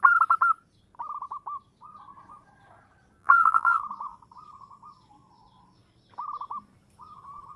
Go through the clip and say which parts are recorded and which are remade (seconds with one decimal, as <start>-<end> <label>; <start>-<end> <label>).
0.0-3.2 recorded; 3.2-3.8 remade; 3.8-7.6 recorded